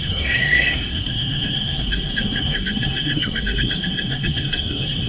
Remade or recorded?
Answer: remade